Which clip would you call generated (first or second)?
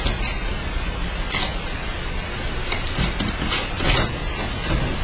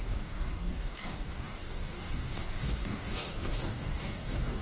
second